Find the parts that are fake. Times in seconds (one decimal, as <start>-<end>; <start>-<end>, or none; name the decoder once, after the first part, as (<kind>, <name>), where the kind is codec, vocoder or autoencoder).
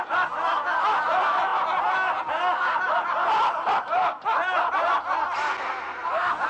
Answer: none